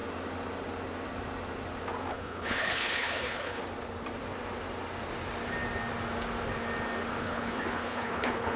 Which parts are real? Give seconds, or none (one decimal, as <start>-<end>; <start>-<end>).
0.0-2.1; 3.6-7.2